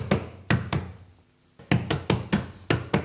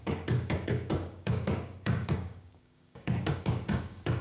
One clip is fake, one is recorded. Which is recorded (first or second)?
first